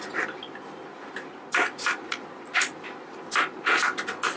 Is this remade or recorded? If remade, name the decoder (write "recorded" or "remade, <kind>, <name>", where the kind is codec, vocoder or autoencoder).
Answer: recorded